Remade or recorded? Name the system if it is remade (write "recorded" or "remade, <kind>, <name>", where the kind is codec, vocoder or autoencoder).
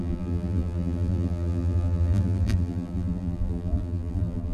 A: remade, vocoder, BigVGAN v2